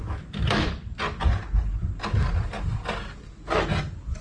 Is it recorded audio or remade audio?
recorded